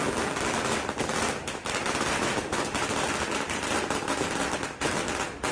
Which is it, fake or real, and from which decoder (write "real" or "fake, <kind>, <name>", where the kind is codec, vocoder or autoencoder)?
real